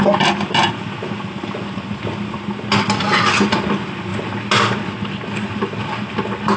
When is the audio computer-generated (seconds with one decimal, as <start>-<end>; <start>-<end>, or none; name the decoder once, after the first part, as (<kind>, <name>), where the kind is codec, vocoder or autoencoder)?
none